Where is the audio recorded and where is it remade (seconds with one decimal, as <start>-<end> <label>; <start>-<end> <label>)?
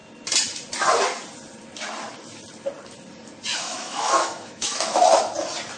0.0-3.5 recorded; 3.5-5.0 remade; 5.0-5.8 recorded